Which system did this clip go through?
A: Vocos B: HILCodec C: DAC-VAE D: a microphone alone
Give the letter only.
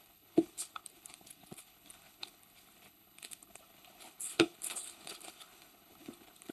B